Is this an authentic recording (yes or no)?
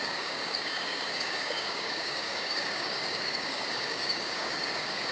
no